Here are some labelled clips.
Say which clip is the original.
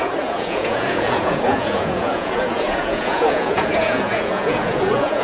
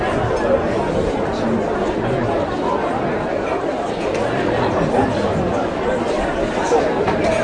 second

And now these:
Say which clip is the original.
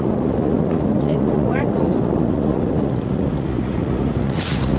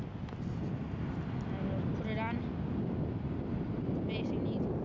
second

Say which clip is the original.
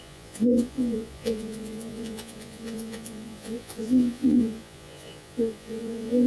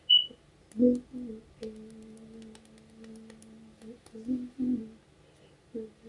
second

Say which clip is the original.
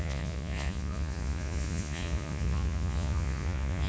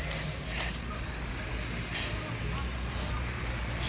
second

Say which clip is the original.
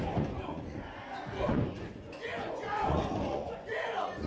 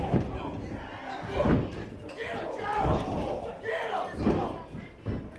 second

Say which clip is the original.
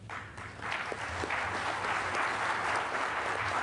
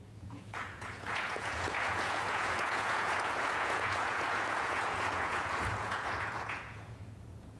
first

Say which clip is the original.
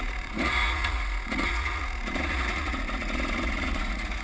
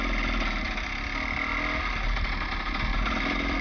second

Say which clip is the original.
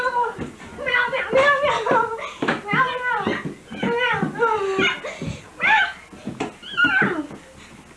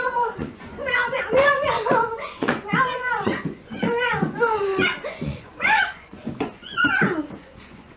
first